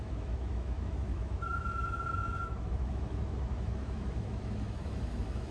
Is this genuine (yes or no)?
no